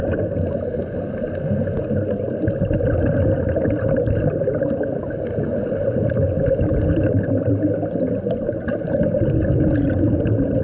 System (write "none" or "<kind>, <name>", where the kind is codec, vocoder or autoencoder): none